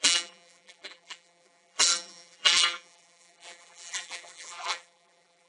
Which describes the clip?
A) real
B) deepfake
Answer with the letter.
B